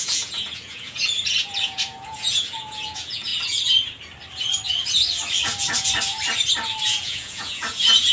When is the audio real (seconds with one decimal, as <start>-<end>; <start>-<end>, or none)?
3.3-6.8